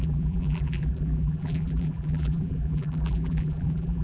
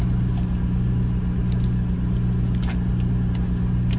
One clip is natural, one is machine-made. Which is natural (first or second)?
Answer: second